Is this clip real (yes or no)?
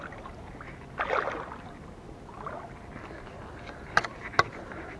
yes